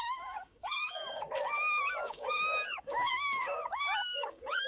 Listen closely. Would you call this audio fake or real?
fake